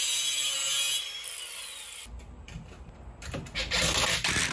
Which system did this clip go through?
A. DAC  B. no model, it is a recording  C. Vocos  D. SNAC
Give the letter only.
B